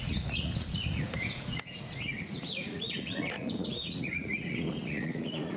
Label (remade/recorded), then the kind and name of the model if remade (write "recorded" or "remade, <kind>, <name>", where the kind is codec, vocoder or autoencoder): remade, vocoder, Vocos